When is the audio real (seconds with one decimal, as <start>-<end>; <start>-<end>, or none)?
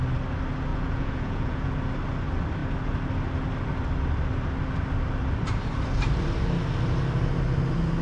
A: 0.0-0.7; 1.7-8.0